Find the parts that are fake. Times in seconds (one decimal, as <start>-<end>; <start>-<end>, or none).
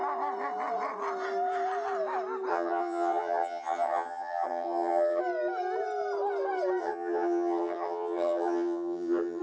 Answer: 2.5-5.2; 6.8-9.4